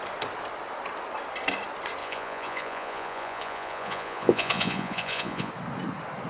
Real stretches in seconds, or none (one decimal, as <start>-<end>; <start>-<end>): 0.0-2.0; 5.5-6.3